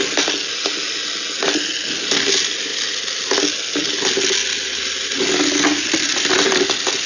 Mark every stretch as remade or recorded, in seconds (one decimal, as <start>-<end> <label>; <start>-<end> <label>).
0.0-7.1 recorded